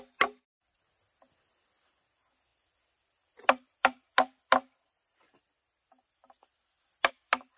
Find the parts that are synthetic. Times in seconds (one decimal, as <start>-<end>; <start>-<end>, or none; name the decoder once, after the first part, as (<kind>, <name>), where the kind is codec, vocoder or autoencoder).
none